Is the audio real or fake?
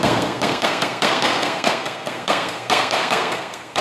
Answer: fake